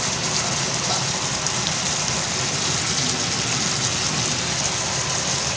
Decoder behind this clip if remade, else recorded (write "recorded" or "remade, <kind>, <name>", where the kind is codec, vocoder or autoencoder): recorded